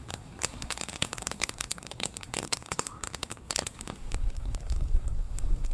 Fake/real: fake